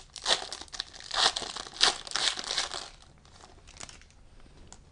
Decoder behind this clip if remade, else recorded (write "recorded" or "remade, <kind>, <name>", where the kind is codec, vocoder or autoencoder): recorded